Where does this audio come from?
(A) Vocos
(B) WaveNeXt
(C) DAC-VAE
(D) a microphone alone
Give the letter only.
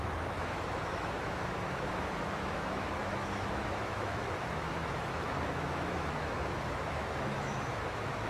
C